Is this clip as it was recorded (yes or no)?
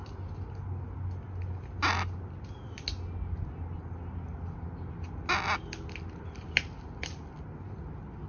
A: yes